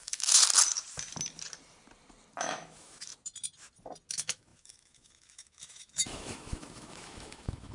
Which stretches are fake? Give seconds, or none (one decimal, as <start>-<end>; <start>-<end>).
0.0-0.4; 2.4-3.1; 4.1-7.7